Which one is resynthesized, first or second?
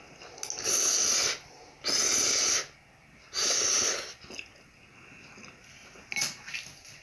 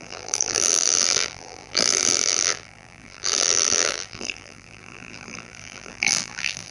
second